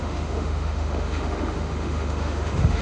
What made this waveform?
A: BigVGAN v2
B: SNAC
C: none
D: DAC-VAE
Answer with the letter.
D